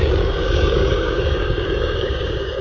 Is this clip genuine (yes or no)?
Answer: no